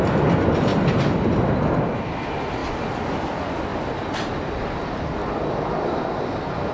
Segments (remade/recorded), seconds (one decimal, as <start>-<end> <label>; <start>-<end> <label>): 0.0-6.7 recorded